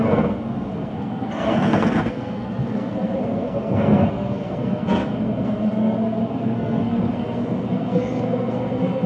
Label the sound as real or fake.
fake